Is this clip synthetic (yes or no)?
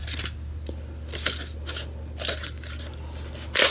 no